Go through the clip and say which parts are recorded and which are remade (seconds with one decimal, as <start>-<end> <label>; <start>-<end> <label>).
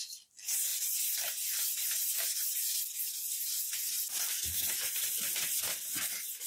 0.0-4.5 recorded; 4.5-5.1 remade; 5.1-6.5 recorded